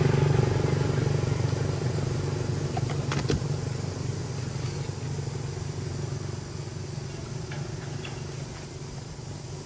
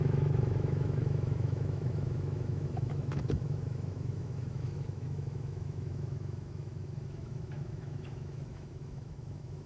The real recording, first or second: first